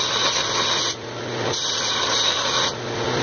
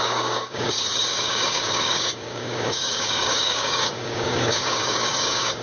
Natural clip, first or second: first